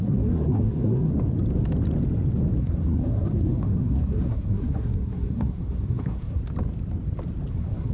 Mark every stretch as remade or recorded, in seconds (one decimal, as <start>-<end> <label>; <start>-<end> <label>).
0.0-1.1 remade; 1.1-2.6 recorded; 2.6-6.4 remade; 6.4-7.5 recorded; 7.5-7.9 remade